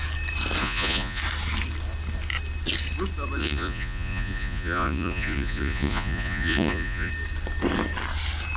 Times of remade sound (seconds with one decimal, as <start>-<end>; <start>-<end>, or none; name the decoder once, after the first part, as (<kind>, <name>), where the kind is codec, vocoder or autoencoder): 0.6-1.2 (vocoder, Vocos); 3.4-7.1